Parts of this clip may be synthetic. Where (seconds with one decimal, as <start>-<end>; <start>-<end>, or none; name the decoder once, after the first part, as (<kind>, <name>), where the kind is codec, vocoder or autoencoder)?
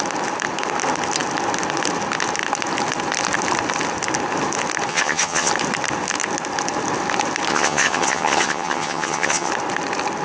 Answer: 4.9-5.5 (vocoder, HiFi-GAN); 7.5-9.5